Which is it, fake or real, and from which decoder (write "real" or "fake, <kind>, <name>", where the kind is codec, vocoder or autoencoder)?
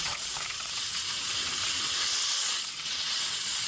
fake, vocoder, WaveNeXt